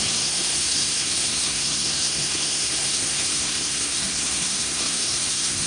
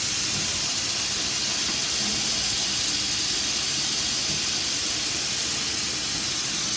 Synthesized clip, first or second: first